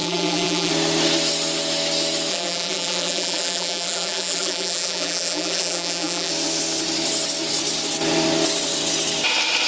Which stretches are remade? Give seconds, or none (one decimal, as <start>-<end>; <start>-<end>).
0.0-0.7; 2.3-6.3